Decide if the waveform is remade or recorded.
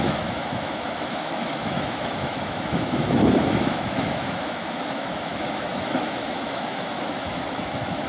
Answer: remade